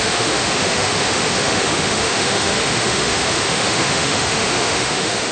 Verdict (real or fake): fake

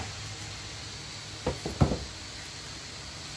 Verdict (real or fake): real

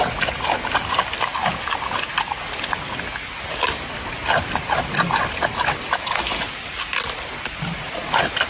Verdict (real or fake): real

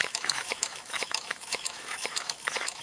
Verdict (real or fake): fake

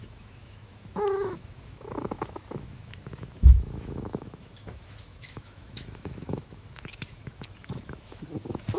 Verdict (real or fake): fake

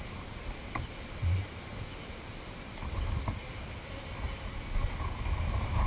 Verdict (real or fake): real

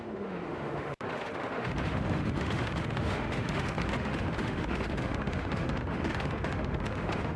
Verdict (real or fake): fake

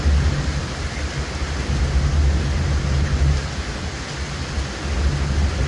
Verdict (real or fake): real